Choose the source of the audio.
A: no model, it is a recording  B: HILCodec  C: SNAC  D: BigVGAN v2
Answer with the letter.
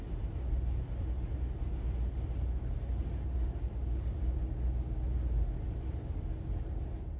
A